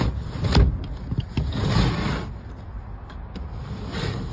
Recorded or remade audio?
recorded